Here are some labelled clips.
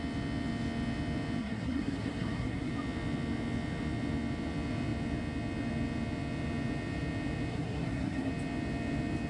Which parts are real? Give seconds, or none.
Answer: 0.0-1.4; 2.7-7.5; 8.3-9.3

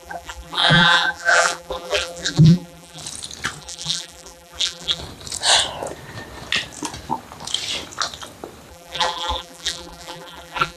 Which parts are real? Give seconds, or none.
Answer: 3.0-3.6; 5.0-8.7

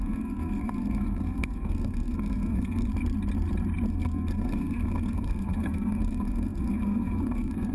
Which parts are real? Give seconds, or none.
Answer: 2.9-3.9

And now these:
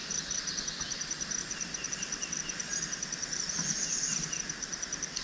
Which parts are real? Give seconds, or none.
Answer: 1.9-5.2

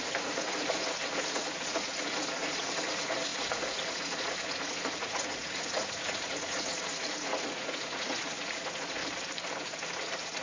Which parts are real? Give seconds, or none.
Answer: 9.0-9.6

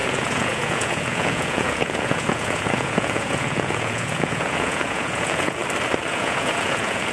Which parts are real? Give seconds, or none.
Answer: 5.6-6.1

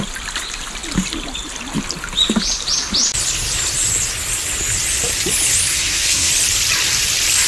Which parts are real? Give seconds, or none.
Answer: 0.0-5.7; 6.3-7.5